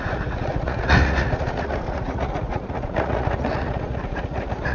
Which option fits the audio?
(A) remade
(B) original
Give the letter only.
A